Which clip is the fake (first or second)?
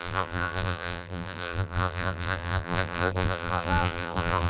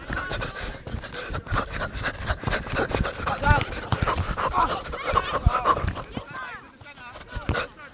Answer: first